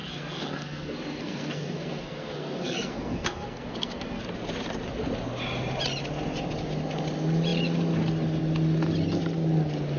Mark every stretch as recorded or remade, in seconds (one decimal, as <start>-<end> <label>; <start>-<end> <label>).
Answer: 0.0-4.2 remade; 4.2-10.0 recorded